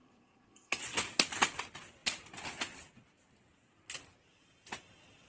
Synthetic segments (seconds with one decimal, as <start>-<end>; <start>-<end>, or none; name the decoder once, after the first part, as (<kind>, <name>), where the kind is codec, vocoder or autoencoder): 0.0-0.8 (codec, SNAC)